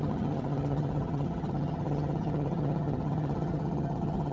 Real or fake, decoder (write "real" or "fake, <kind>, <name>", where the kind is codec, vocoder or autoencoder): fake, vocoder, HiFi-GAN